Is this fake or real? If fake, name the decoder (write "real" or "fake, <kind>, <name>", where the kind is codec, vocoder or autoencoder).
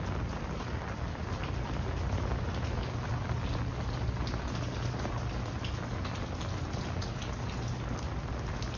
real